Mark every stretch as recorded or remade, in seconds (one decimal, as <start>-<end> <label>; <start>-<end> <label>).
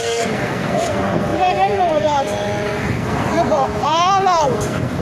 0.0-5.0 remade